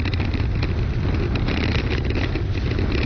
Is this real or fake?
real